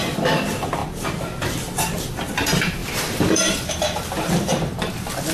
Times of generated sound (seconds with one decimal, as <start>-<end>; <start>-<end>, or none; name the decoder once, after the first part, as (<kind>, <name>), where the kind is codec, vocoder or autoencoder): 0.0-5.3 (vocoder, BigVGAN v2)